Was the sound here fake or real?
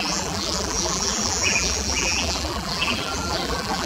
fake